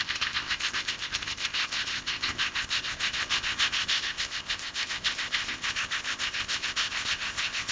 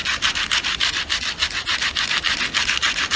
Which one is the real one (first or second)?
second